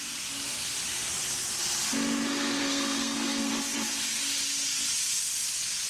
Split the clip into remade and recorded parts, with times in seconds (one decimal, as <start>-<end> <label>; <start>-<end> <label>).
0.0-2.6 recorded; 2.6-3.5 remade; 3.5-5.9 recorded